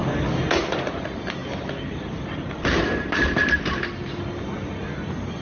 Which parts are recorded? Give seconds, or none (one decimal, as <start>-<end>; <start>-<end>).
0.0-1.4; 3.4-5.4